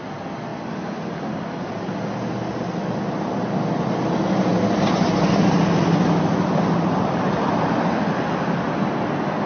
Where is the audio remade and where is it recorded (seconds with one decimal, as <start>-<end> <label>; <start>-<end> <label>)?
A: 0.0-9.5 recorded